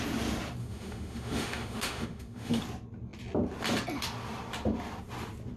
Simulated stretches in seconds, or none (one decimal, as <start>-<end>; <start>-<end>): 0.6-2.6